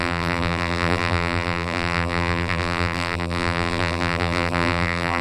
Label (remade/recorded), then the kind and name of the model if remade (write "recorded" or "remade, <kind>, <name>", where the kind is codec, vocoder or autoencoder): remade, vocoder, BigVGAN v2